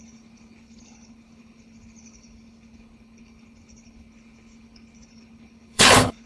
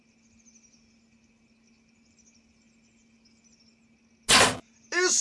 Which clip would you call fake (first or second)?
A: first